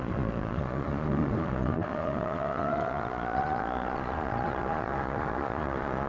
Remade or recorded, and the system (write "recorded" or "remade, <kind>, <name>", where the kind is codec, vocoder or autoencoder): remade, vocoder, Vocos